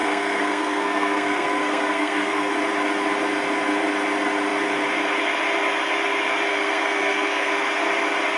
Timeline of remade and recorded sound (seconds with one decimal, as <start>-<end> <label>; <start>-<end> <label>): 0.0-2.5 remade; 2.5-6.5 recorded; 6.5-7.5 remade; 7.5-8.4 recorded